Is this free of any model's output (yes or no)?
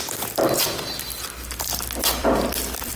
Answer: no